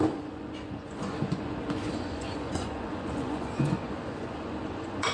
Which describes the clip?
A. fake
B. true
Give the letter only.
A